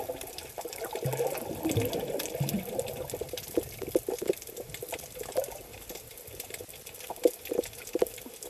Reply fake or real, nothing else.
real